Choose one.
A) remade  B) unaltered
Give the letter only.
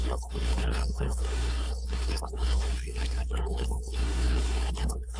A